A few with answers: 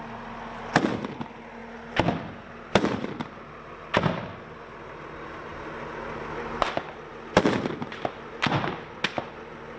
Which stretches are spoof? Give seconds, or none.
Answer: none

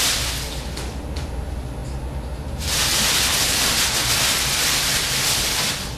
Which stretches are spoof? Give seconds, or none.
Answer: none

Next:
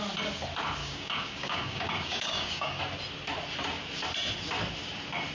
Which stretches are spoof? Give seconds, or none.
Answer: 0.8-2.8 (codec, DAC)